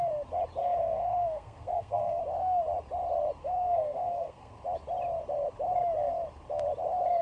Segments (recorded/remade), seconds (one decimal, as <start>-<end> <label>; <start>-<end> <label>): 0.0-0.6 recorded; 0.6-2.2 remade; 2.2-3.4 recorded; 3.4-4.5 remade; 4.5-7.2 recorded